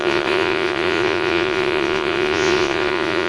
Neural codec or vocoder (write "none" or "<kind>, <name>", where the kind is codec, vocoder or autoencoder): vocoder, Vocos